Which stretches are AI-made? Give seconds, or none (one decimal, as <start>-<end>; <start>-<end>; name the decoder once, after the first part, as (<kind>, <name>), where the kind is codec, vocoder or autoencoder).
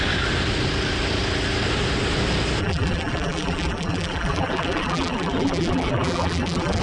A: 2.6-6.8 (vocoder, BigVGAN v2)